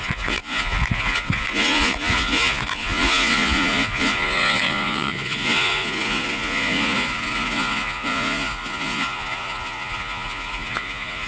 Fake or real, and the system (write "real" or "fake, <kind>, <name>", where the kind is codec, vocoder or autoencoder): fake, vocoder, Vocos